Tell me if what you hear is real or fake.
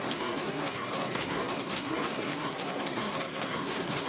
fake